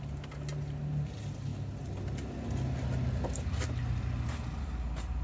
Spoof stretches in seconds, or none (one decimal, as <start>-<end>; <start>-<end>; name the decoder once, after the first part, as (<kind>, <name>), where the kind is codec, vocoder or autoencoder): none